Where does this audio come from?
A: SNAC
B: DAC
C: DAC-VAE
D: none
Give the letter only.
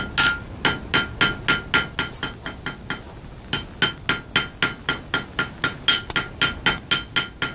D